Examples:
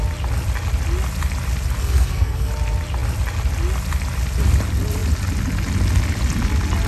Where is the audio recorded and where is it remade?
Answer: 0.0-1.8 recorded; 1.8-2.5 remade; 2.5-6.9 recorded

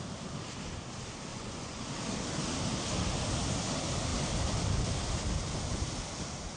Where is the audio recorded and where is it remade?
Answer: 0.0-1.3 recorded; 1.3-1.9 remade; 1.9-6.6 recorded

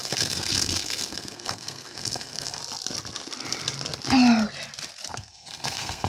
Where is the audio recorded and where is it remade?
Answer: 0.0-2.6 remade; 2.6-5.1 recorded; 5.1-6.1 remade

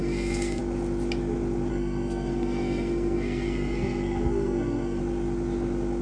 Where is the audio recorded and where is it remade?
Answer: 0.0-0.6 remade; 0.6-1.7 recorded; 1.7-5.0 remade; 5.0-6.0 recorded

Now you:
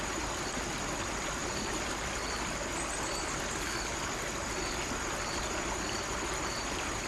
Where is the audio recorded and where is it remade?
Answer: 0.0-7.1 recorded